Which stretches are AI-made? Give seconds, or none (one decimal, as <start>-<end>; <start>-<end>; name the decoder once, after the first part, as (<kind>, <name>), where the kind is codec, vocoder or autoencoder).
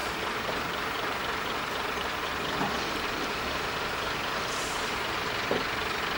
0.0-2.3 (vocoder, BigVGAN v2)